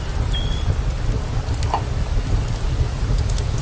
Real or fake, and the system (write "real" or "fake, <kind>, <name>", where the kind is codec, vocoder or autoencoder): real